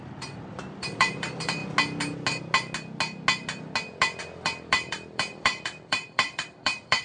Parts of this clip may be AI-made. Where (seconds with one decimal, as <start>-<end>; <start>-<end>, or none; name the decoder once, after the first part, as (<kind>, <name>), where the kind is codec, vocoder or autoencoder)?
0.0-1.6 (vocoder, BigVGAN v2); 4.2-7.0